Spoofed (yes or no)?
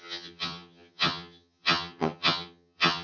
yes